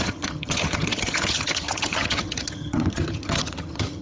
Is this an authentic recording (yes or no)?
no